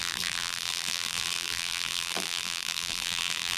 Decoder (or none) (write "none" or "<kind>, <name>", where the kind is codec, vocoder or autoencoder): vocoder, BigVGAN v2